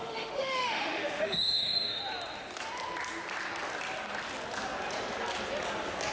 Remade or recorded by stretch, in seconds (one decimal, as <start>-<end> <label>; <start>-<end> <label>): 0.0-2.0 remade; 2.0-6.1 recorded